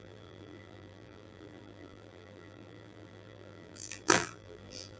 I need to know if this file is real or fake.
fake